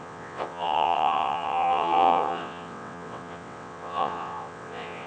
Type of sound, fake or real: fake